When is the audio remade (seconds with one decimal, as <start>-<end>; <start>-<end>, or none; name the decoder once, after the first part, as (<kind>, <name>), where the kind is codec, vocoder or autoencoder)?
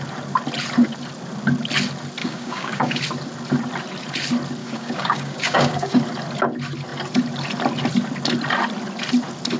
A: 2.2-3.0 (codec, DAC); 4.6-6.0